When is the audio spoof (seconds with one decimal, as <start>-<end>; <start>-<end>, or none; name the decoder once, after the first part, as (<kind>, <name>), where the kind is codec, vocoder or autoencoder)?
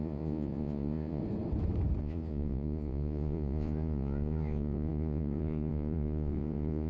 0.0-1.2 (vocoder, Vocos); 2.0-6.9